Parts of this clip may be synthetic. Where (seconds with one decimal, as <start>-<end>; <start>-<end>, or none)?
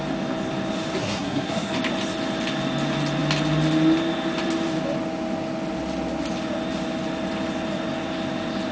1.0-1.7